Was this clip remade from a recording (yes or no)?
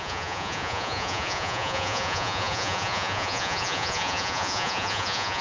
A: yes